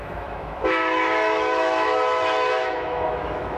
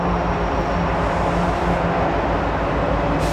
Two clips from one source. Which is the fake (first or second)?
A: first